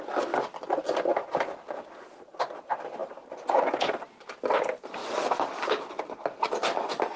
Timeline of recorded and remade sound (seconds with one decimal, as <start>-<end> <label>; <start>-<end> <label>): 0.0-7.2 recorded